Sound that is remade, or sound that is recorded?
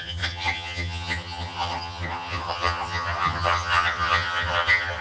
remade